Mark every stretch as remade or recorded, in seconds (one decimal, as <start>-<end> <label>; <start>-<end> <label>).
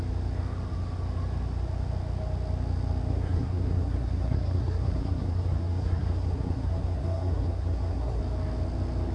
0.0-3.1 recorded; 3.1-8.2 remade; 8.2-9.1 recorded